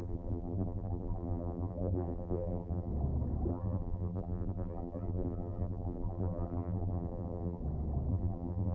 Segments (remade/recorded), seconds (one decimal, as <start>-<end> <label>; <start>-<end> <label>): 0.0-2.9 remade; 2.9-3.5 recorded; 3.5-7.6 remade; 7.6-8.1 recorded; 8.1-8.7 remade